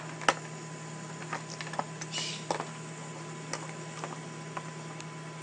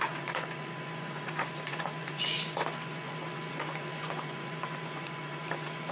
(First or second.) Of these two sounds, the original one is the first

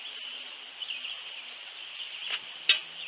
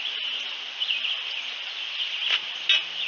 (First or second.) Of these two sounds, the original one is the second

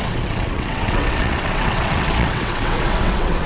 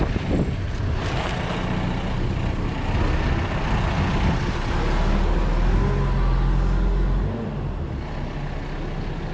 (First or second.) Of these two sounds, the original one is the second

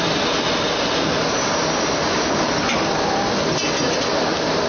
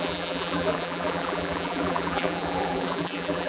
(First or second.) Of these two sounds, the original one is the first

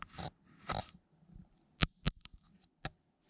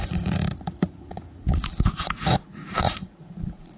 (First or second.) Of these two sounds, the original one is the first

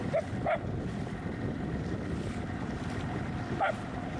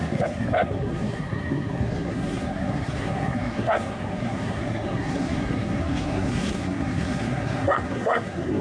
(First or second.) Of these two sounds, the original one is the first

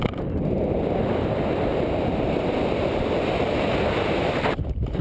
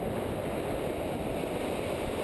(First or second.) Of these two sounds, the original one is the first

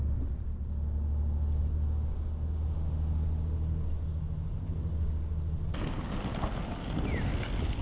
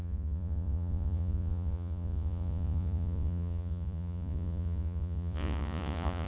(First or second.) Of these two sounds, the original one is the first